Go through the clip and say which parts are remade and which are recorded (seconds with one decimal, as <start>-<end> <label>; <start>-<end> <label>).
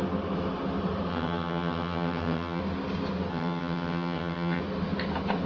0.0-1.1 recorded; 1.1-2.6 remade; 2.6-3.3 recorded; 3.3-4.6 remade; 4.6-5.5 recorded